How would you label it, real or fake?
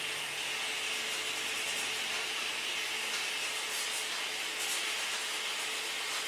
real